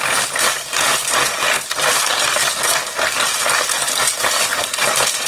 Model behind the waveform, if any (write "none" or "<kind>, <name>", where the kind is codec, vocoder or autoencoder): none